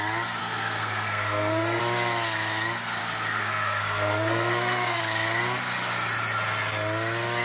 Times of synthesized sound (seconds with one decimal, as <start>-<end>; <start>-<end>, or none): 0.4-1.8; 3.0-5.0